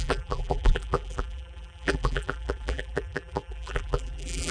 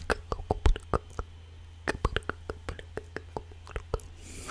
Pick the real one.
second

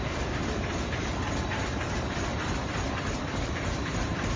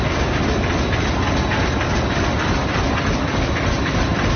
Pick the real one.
second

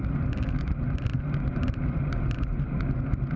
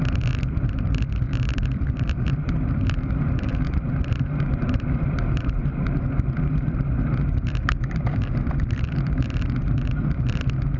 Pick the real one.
first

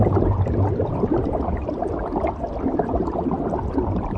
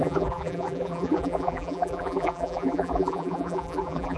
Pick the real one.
first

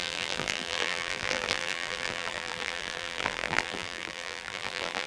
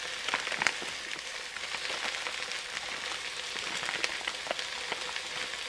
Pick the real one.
second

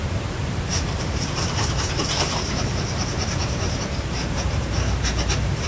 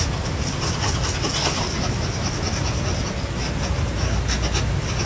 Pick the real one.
second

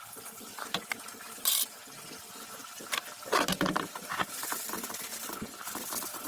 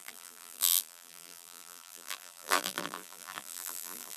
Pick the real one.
first